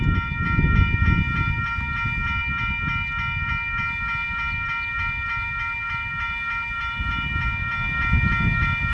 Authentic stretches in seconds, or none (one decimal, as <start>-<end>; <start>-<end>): 0.0-8.9

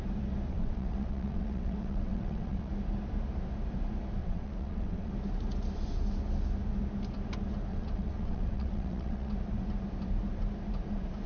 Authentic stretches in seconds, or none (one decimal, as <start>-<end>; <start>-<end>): 0.0-0.5; 2.7-4.2; 5.1-7.7; 9.3-11.3